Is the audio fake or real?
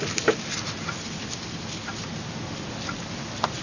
real